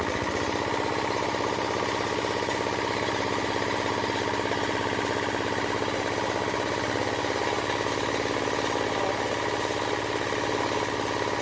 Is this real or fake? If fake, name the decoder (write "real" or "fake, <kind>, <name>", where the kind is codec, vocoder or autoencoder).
real